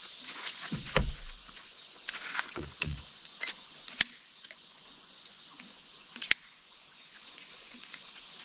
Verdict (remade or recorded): remade